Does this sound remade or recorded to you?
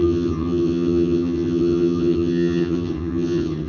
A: remade